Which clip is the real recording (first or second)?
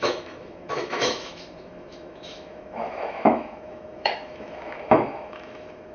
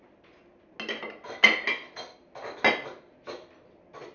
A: second